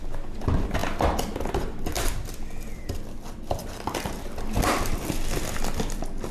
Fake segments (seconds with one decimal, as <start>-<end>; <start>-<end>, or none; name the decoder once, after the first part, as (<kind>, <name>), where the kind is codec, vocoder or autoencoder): none